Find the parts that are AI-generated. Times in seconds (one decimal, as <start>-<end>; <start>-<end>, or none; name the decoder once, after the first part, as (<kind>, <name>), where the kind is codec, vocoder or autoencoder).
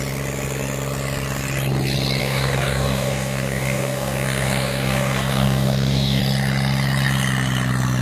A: 2.2-6.2 (codec, DAC)